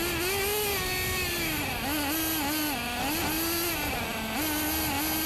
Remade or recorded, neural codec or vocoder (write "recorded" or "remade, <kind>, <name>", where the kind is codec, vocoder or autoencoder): recorded